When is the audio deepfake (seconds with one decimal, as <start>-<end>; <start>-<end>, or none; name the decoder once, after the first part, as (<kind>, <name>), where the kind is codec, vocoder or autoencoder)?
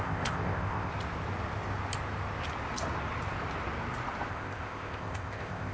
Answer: 0.0-0.9 (codec, ZipCodec); 4.3-5.7